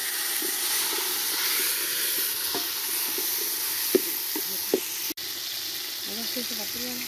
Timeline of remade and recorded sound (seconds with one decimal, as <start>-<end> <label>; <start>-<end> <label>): 0.0-7.1 recorded